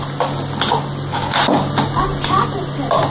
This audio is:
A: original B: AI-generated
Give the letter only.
A